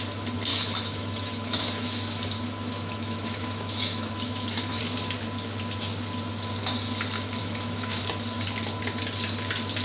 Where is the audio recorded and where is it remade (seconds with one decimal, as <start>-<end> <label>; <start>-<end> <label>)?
0.0-0.5 recorded; 0.5-4.8 remade; 4.8-7.4 recorded; 7.4-8.0 remade; 8.0-9.8 recorded